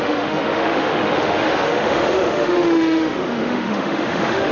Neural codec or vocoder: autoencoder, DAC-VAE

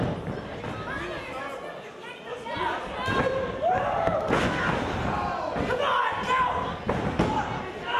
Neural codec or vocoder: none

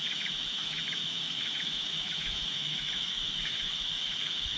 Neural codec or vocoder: autoencoder, DAC-VAE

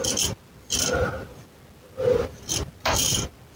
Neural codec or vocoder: none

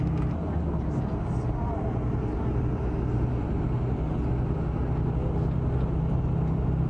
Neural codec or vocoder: none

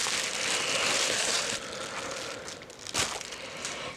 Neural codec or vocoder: none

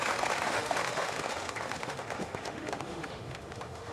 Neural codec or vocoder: autoencoder, DAC-VAE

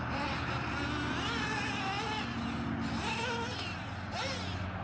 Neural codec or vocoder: none